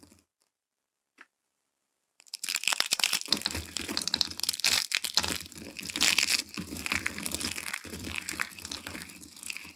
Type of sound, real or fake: fake